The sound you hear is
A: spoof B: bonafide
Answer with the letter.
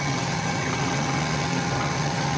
A